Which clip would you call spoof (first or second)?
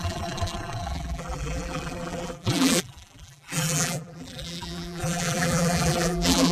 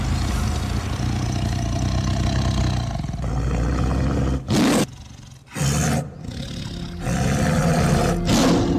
first